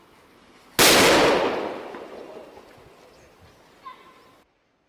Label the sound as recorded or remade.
recorded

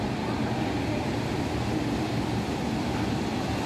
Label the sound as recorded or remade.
recorded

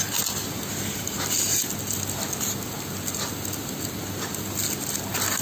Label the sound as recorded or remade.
recorded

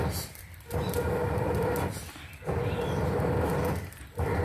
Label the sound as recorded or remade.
remade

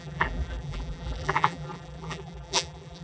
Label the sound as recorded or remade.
remade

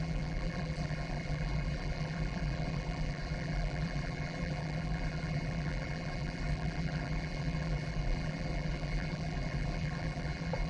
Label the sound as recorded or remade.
remade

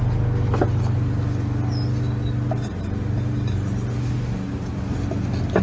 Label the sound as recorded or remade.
recorded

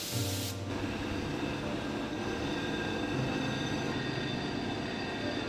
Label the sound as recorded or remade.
recorded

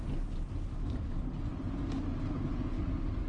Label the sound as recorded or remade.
recorded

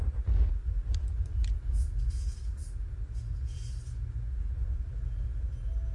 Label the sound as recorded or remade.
recorded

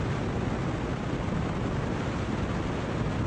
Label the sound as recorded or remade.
recorded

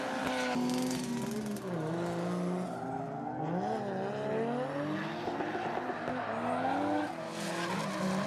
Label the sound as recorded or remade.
recorded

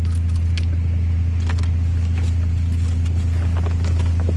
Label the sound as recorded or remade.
recorded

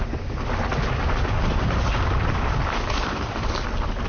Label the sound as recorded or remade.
recorded